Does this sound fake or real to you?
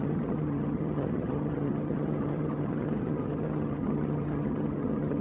fake